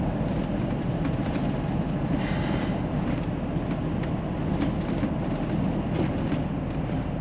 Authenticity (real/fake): real